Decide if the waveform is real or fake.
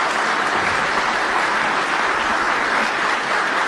real